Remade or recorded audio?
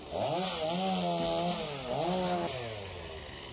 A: recorded